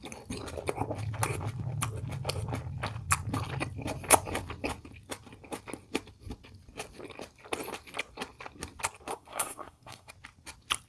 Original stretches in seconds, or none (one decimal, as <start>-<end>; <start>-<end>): 0.0-9.1; 10.1-10.9